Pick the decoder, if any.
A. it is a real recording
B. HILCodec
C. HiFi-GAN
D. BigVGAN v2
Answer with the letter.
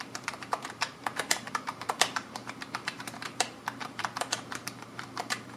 D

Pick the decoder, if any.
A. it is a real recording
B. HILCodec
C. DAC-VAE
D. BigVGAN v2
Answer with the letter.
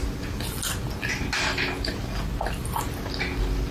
A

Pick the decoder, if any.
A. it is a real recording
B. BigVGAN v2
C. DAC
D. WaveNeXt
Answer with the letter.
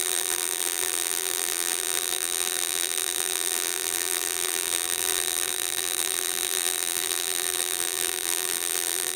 B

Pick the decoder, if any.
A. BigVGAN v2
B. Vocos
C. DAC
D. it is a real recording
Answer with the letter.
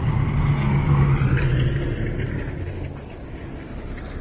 D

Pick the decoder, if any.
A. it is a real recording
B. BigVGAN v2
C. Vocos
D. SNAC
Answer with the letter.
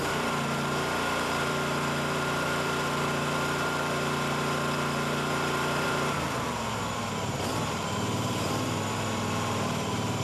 B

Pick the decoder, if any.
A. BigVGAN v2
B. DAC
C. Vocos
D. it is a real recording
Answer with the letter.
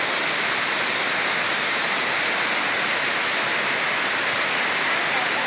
D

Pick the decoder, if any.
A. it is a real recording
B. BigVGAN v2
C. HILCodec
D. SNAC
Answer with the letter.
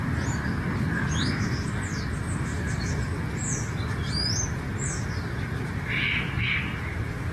A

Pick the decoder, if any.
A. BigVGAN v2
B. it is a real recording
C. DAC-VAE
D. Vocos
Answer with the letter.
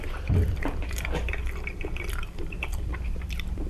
A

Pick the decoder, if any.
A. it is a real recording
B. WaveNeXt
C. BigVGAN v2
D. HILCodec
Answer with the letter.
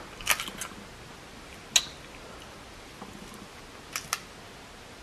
A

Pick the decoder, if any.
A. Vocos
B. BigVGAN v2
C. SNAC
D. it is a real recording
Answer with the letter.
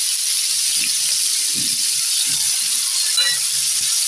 D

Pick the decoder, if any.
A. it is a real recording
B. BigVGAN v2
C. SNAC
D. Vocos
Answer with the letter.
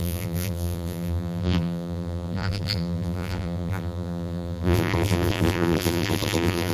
B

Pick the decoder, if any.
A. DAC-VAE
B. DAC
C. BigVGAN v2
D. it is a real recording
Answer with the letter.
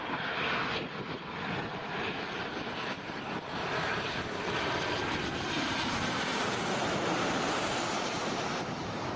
C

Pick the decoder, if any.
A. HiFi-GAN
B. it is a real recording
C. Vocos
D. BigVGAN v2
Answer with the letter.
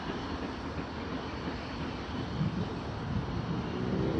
B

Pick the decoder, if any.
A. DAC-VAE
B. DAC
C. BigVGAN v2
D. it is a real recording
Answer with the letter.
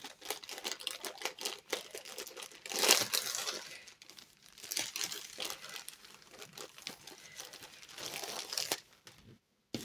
D